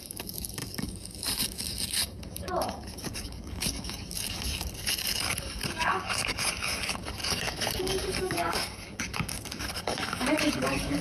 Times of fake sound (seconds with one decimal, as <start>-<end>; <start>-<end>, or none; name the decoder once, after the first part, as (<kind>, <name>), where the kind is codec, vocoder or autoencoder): 0.0-11.0 (codec, DAC)